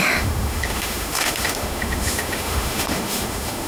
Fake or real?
fake